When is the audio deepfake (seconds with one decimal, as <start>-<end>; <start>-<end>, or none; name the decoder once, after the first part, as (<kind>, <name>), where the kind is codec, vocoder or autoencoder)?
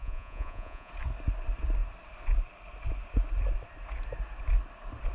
0.0-0.9 (vocoder, Vocos)